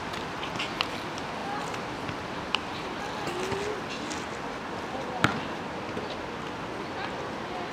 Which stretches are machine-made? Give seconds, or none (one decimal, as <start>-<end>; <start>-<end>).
none